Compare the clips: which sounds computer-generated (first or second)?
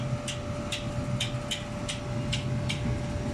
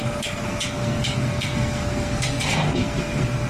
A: second